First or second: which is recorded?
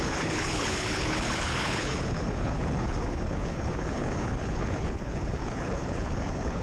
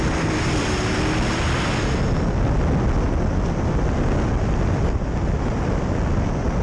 second